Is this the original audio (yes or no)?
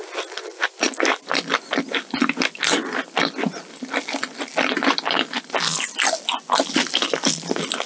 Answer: yes